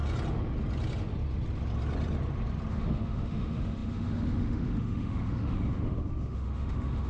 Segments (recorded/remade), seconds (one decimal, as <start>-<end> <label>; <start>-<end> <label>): 0.0-2.7 recorded; 2.7-7.1 remade